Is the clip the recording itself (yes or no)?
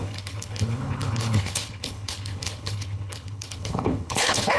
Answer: no